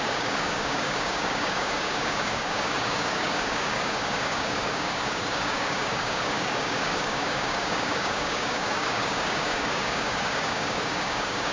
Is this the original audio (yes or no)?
no